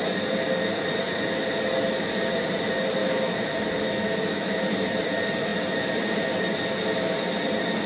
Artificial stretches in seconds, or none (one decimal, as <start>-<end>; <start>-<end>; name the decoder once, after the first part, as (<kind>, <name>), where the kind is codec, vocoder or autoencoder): 3.0-4.9 (autoencoder, DAC-VAE)